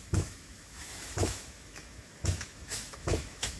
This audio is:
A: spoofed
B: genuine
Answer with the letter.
A